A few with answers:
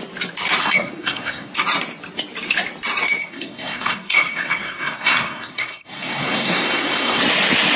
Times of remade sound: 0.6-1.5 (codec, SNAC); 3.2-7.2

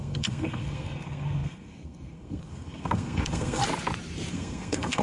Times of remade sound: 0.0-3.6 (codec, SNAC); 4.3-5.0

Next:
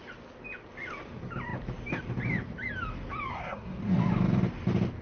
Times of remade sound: 3.3-3.8 (codec, SNAC)

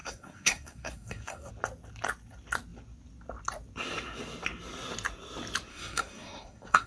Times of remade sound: 0.0-1.5 (codec, SNAC); 5.7-6.9

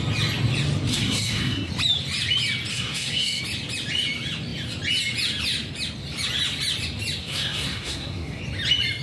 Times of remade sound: 0.9-1.7 (codec, SNAC); 2.7-3.4; 7.2-8.4